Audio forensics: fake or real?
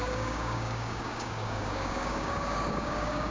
fake